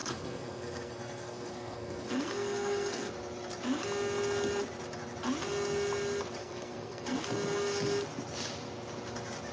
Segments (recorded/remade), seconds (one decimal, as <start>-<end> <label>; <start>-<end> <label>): 0.0-3.1 remade; 3.1-6.4 recorded; 6.4-7.2 remade; 7.2-9.5 recorded